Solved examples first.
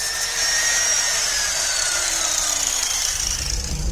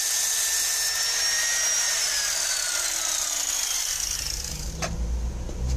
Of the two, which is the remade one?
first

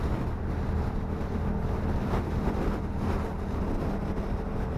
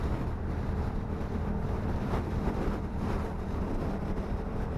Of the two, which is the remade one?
second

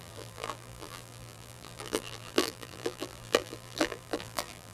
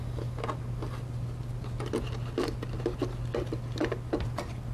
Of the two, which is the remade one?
first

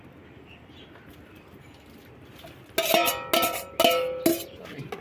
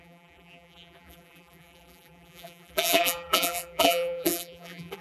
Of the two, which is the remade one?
second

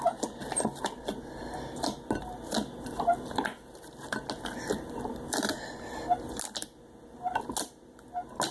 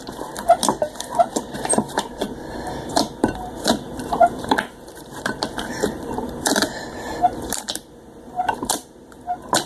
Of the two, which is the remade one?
second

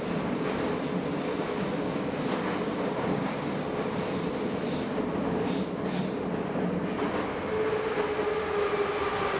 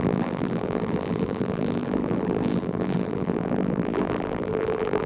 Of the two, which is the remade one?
second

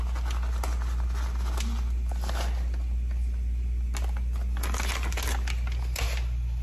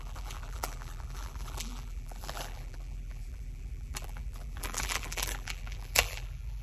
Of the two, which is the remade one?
second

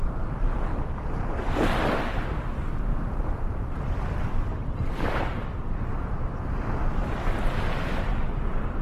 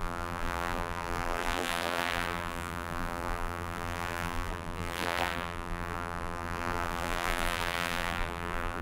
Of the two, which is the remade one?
second